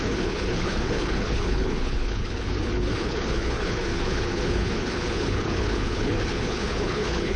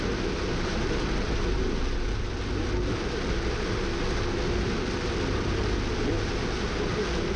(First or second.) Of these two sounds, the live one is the second